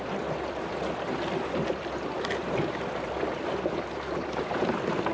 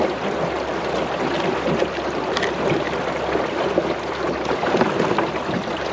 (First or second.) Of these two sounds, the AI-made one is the first